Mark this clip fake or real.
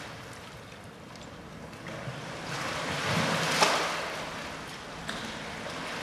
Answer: real